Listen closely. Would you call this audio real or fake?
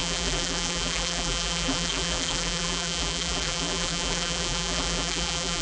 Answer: fake